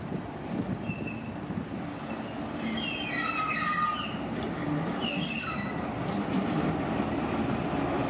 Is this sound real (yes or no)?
yes